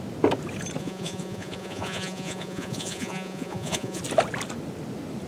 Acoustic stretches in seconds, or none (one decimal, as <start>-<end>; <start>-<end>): 0.0-0.8; 4.0-5.3